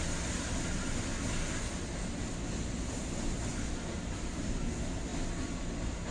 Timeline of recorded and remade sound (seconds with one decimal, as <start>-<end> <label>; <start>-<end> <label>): 0.0-6.1 recorded